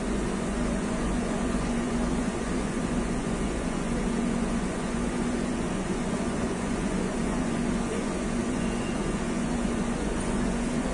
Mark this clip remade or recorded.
remade